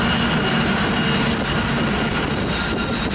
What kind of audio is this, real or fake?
real